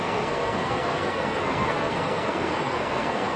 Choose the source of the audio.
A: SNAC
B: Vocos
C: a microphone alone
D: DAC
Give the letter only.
A